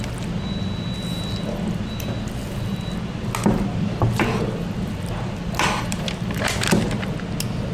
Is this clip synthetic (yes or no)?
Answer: no